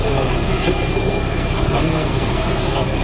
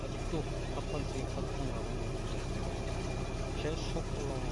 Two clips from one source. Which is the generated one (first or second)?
first